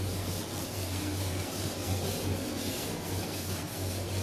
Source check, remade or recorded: remade